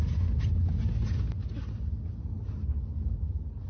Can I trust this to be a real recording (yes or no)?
yes